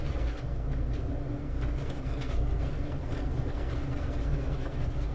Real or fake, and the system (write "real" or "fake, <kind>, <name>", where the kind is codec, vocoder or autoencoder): fake, codec, SNAC